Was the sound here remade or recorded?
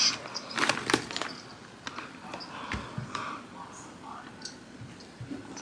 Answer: recorded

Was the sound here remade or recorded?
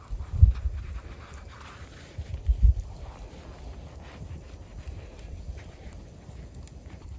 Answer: recorded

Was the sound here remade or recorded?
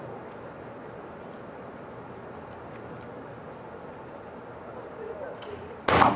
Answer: recorded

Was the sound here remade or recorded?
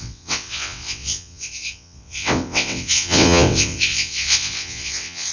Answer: remade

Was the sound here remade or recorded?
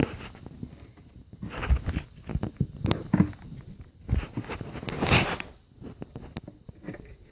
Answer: recorded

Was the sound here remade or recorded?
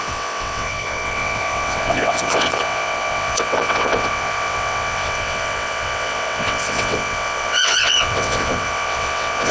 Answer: remade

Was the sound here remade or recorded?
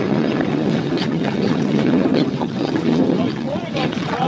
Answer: remade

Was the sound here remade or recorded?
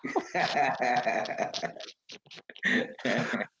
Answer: recorded